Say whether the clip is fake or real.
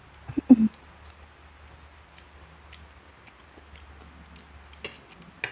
real